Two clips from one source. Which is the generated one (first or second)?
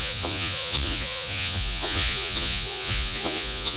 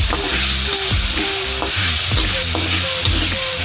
first